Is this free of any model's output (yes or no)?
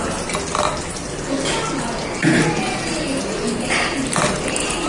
yes